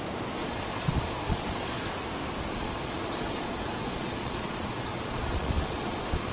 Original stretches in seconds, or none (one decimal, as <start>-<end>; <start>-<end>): 0.0-0.4; 1.9-2.5